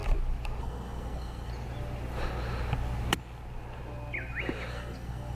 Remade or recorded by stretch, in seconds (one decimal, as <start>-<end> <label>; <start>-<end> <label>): 0.0-0.6 recorded; 0.6-1.5 remade; 1.5-4.7 recorded; 4.7-5.3 remade